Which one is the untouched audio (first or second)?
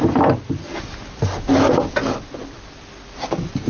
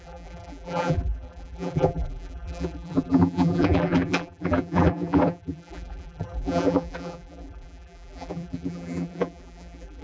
first